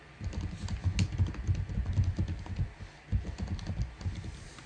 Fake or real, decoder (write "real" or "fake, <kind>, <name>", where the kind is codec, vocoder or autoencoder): real